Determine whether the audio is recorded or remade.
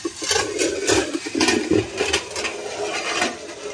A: recorded